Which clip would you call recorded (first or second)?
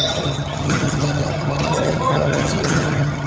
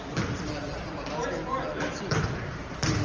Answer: second